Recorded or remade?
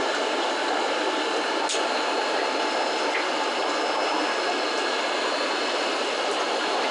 recorded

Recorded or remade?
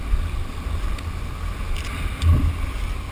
recorded